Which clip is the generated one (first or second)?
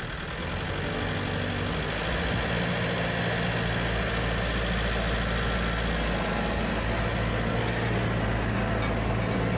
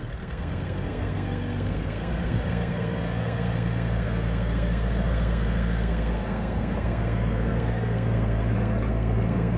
second